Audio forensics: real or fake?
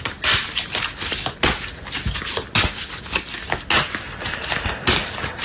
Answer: real